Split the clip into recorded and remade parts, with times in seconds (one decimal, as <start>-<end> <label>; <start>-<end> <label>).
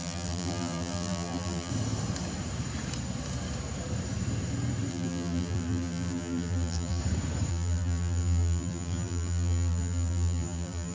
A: 0.0-1.7 remade; 1.7-4.9 recorded; 4.9-7.0 remade; 7.0-7.5 recorded; 7.5-10.9 remade